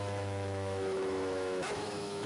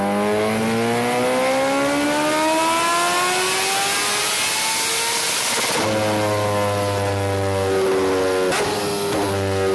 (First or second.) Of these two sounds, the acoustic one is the second